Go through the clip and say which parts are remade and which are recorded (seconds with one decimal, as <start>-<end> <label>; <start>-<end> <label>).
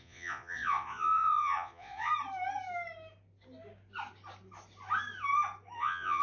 0.0-2.1 remade; 2.1-5.8 recorded; 5.8-6.2 remade